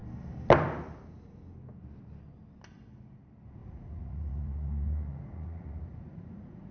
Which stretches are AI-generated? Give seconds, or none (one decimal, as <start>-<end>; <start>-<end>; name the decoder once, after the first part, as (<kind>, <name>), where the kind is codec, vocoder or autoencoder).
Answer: 3.6-6.7 (vocoder, Vocos)